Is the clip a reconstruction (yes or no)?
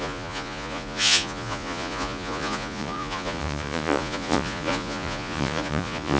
yes